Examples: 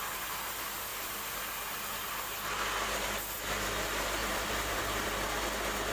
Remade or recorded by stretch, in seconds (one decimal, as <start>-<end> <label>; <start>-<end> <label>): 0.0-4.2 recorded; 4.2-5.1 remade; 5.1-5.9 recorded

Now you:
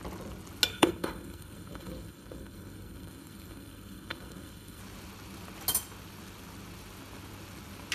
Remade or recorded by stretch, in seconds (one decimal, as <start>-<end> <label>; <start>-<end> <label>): 0.0-0.7 recorded; 0.7-4.8 remade; 4.8-7.9 recorded

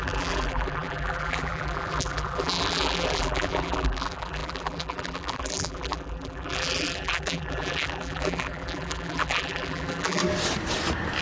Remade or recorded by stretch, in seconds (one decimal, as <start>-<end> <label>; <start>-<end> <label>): 0.0-10.2 remade; 10.2-11.2 recorded

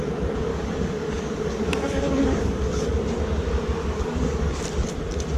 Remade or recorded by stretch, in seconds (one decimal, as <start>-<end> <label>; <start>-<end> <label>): 0.0-0.5 recorded; 0.5-3.0 remade; 3.0-3.8 recorded; 3.8-4.5 remade; 4.5-5.4 recorded

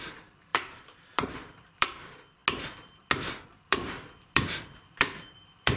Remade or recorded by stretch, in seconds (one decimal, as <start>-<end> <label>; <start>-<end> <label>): 0.0-2.4 remade; 2.4-3.5 recorded; 3.5-5.8 remade